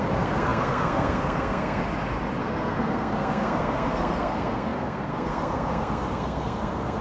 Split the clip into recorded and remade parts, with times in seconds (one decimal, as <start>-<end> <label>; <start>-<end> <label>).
0.0-1.8 remade; 1.8-2.4 recorded; 2.4-7.0 remade